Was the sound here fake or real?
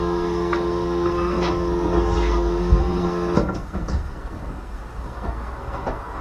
fake